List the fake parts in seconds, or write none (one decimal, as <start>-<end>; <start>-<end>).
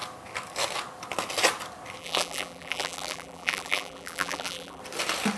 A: 2.0-4.8